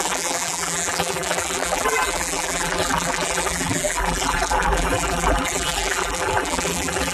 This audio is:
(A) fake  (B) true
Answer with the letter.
A